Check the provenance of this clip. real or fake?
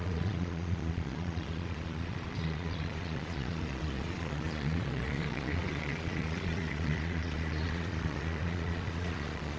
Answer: fake